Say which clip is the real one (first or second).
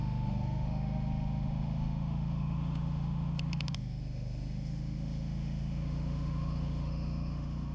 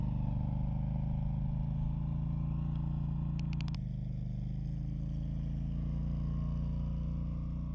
second